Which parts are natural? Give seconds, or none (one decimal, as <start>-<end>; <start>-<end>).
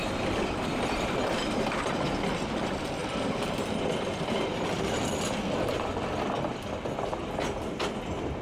0.0-3.0; 5.9-8.4